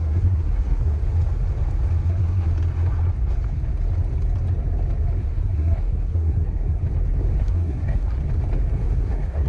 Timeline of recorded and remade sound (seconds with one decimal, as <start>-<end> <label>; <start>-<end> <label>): 0.0-1.0 remade; 1.0-2.1 recorded; 2.1-2.5 remade; 2.5-5.2 recorded; 5.2-6.8 remade; 6.8-7.4 recorded; 7.4-8.2 remade; 8.2-8.7 recorded; 8.7-9.5 remade